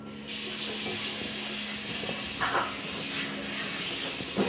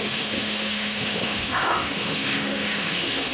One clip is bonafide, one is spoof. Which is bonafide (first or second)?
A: first